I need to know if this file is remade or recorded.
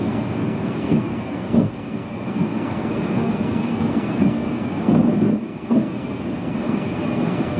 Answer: remade